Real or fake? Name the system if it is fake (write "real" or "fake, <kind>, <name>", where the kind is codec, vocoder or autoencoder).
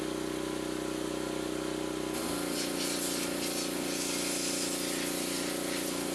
real